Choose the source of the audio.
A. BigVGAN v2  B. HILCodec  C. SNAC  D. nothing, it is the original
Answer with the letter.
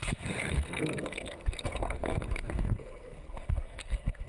C